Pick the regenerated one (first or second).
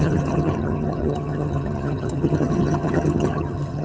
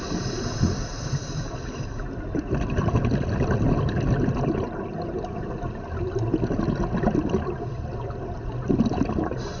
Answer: first